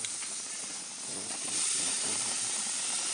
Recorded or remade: remade